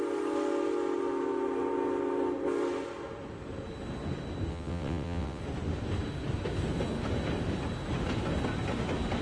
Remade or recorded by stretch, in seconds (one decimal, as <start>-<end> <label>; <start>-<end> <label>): 0.0-4.5 recorded; 4.5-5.4 remade; 5.4-9.2 recorded